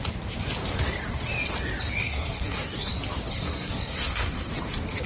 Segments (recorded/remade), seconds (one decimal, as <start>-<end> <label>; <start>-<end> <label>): 0.0-2.0 recorded; 2.0-2.9 remade; 2.9-3.3 recorded; 3.3-4.5 remade; 4.5-5.1 recorded